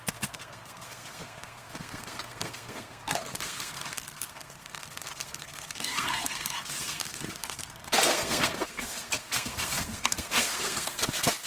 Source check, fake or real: fake